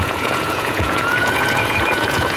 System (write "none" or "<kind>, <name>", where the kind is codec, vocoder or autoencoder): vocoder, Vocos